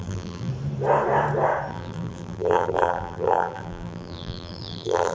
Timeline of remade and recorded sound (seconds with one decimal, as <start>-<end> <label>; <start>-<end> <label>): 0.0-0.5 remade; 0.5-1.7 recorded; 1.7-5.1 remade